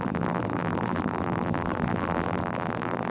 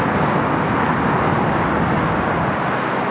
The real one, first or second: second